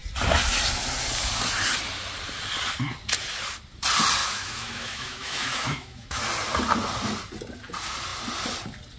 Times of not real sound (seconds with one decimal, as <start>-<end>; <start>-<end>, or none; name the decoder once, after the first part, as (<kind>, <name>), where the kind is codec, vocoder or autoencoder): 4.2-6.2 (autoencoder, DAC-VAE)